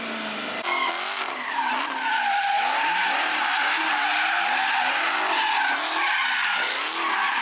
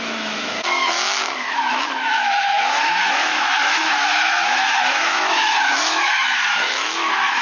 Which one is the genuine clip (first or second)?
first